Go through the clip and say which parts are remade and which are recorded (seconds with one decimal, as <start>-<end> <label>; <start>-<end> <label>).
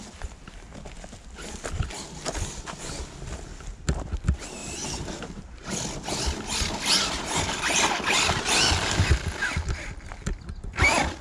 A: 0.0-4.6 recorded; 4.6-5.7 remade; 5.7-11.2 recorded